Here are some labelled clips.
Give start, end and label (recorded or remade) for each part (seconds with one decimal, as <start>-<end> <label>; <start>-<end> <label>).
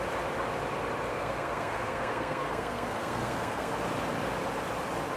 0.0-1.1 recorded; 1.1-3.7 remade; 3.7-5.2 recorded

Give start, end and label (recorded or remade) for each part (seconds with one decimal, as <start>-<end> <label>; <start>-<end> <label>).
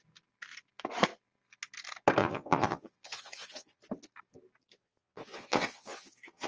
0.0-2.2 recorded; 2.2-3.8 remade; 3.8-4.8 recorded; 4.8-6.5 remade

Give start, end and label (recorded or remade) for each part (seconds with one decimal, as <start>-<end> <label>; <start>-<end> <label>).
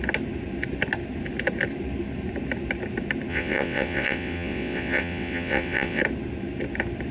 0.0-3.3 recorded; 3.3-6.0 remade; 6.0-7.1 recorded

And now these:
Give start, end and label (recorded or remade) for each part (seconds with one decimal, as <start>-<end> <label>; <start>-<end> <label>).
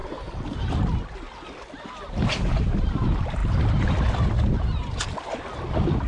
0.0-6.1 recorded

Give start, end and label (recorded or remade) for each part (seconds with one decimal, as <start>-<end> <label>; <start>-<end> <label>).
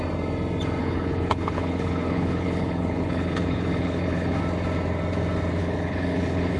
0.0-0.8 recorded; 0.8-4.4 remade; 4.4-5.6 recorded; 5.6-6.6 remade